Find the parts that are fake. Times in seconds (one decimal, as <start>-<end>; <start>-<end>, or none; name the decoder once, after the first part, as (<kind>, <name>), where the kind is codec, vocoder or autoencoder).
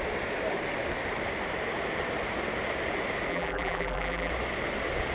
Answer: 3.3-4.3 (vocoder, BigVGAN v2)